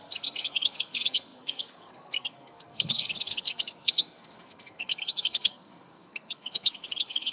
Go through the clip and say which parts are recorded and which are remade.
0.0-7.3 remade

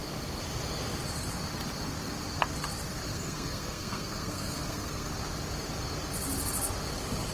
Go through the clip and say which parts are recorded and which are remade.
0.0-3.1 recorded; 3.1-5.1 remade; 5.1-7.3 recorded

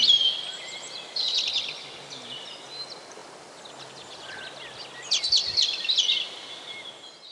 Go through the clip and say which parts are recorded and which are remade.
0.0-7.3 recorded

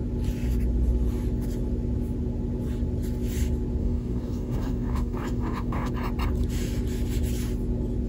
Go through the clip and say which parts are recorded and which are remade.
0.0-3.8 recorded; 3.8-5.9 remade; 5.9-8.1 recorded

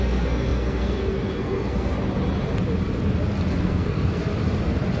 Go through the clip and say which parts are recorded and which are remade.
0.0-1.9 remade; 1.9-3.5 recorded; 3.5-4.2 remade; 4.2-5.0 recorded

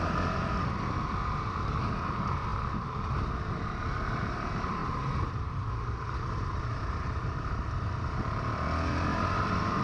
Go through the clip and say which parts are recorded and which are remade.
0.0-4.8 recorded; 4.8-7.7 remade; 7.7-9.1 recorded; 9.1-9.8 remade

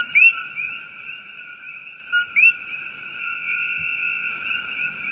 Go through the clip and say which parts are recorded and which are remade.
0.0-3.2 recorded; 3.2-4.3 remade; 4.3-5.1 recorded

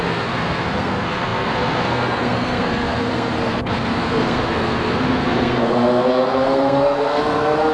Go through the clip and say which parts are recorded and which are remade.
0.0-7.7 remade